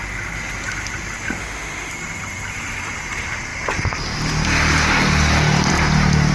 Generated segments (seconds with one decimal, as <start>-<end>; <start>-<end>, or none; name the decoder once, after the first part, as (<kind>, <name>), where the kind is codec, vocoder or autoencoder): 1.4-1.9 (autoencoder, DAC-VAE)